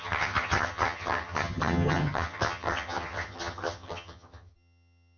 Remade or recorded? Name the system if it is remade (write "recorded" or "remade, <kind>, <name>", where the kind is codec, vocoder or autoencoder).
remade, vocoder, HiFi-GAN